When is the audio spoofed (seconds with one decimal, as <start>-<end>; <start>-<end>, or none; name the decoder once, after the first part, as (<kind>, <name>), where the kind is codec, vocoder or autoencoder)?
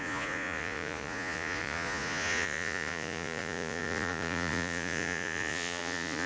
0.0-6.3 (vocoder, Vocos)